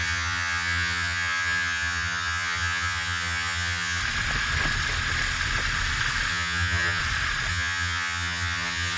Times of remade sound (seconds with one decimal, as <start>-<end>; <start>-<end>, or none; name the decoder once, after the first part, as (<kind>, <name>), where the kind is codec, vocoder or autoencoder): 0.0-4.0 (vocoder, HiFi-GAN); 6.3-7.0; 7.5-9.0